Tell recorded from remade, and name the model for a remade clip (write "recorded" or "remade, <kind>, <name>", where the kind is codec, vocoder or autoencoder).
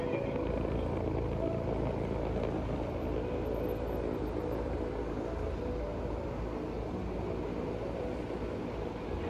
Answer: recorded